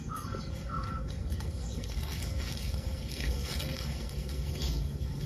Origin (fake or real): fake